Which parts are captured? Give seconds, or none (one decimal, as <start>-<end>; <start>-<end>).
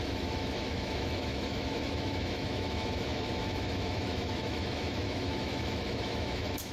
none